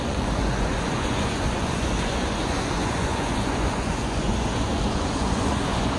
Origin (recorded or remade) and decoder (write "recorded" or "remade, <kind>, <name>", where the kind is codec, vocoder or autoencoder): remade, vocoder, Vocos